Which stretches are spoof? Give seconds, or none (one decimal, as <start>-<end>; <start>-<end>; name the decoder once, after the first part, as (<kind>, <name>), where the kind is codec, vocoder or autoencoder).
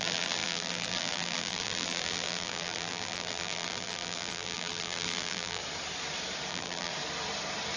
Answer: 0.0-5.6 (vocoder, BigVGAN v2); 6.5-6.9